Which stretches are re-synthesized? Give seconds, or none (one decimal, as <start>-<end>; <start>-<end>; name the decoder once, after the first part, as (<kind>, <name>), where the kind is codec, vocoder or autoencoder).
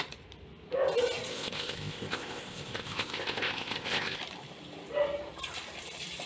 1.3-4.2 (codec, ZipCodec)